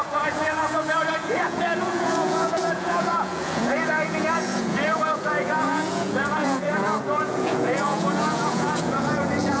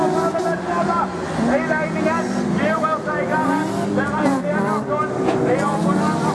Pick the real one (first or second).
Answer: second